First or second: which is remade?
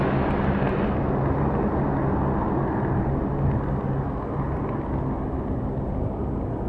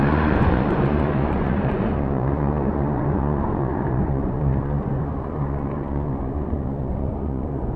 second